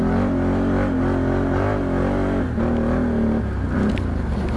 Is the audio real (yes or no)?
yes